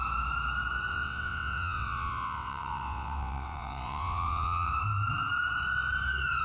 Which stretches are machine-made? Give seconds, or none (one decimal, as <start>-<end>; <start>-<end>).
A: 0.9-4.7